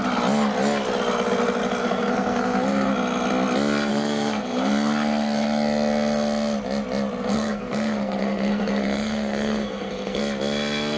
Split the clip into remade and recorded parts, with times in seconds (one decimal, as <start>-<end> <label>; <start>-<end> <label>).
0.0-1.8 recorded; 1.8-2.9 remade; 2.9-3.9 recorded; 3.9-4.7 remade; 4.7-7.3 recorded; 7.3-10.2 remade; 10.2-11.0 recorded